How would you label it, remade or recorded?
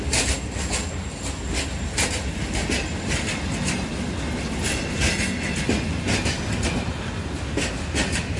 recorded